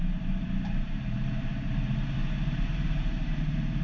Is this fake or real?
fake